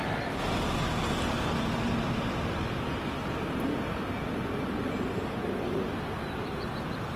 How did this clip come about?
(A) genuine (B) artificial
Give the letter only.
A